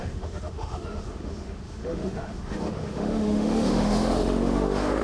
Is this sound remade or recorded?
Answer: remade